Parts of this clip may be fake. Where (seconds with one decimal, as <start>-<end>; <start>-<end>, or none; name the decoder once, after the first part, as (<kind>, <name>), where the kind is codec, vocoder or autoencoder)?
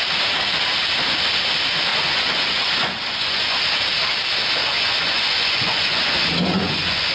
1.9-3.6 (vocoder, Vocos); 4.6-7.1